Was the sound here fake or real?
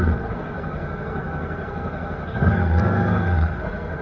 fake